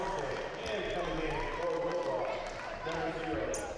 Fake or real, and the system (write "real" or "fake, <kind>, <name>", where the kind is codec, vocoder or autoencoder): real